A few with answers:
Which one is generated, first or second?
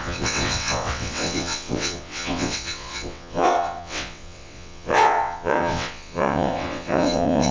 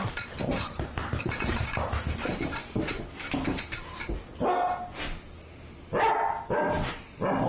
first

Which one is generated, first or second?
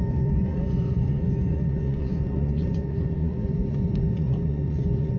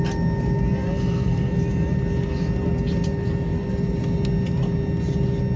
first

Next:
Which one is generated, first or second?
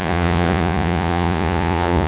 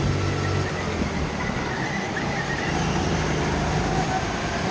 first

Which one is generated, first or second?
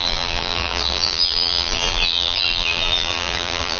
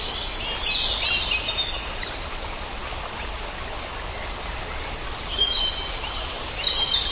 first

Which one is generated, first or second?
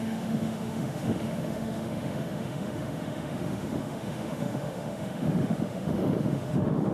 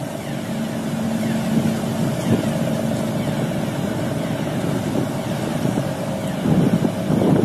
first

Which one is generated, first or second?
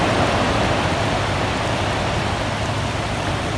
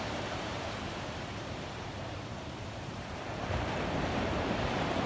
second